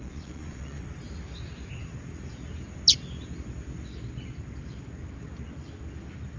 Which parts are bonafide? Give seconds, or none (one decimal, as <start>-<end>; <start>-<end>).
0.8-6.4